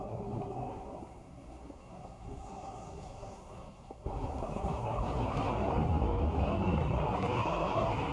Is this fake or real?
fake